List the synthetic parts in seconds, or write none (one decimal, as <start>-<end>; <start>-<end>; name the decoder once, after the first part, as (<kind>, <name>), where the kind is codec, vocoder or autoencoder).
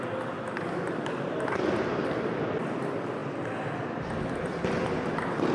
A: none